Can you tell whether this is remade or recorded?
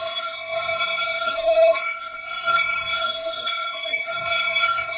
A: remade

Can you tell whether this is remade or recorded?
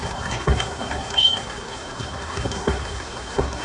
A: remade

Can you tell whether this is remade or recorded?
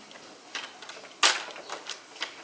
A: recorded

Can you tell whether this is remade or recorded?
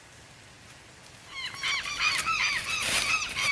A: recorded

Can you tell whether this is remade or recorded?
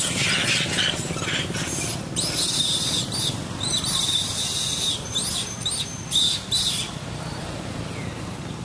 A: recorded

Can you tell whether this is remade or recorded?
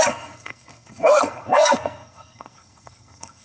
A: remade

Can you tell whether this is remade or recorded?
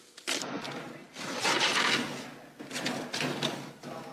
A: recorded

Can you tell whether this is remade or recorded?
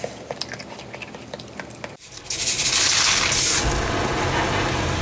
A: recorded